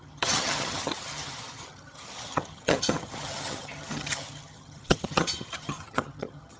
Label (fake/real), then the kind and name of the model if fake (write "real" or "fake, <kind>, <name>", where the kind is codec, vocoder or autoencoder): fake, vocoder, HiFi-GAN